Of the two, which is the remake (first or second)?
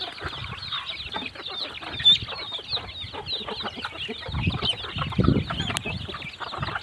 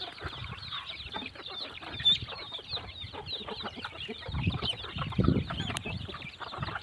second